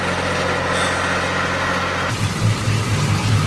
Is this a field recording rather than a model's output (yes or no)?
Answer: yes